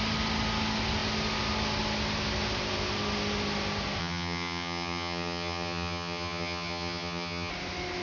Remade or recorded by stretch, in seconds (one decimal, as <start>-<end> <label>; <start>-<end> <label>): 0.0-4.0 recorded; 4.0-7.5 remade; 7.5-8.0 recorded